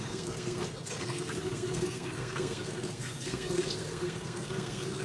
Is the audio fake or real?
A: fake